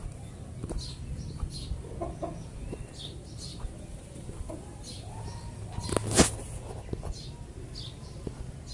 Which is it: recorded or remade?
recorded